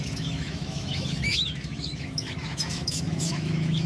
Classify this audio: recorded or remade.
remade